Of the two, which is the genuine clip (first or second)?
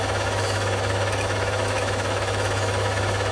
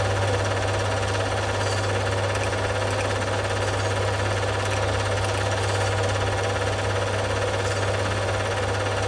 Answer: second